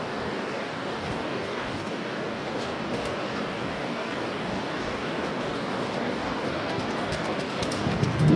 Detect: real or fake fake